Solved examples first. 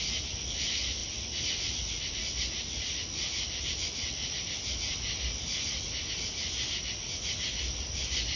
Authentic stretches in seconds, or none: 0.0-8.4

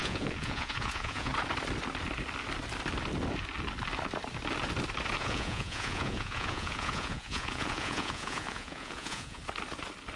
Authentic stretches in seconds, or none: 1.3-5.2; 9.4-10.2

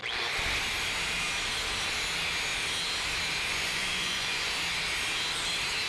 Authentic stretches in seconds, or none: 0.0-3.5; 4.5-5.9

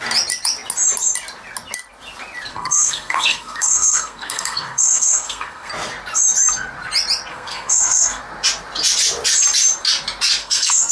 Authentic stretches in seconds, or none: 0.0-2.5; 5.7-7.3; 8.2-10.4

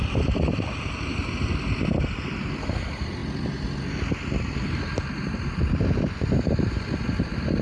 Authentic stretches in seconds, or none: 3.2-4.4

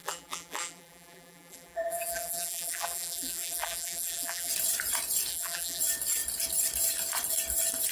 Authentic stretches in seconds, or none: 4.5-5.3; 5.8-7.9

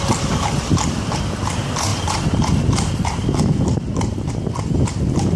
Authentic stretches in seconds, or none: 0.0-5.4